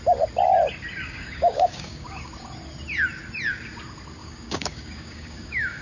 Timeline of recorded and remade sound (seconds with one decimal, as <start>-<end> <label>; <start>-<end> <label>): 0.0-1.0 recorded; 1.0-2.3 remade; 2.3-4.2 recorded; 4.2-5.8 remade